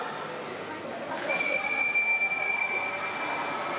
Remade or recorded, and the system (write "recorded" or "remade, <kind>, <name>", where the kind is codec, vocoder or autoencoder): recorded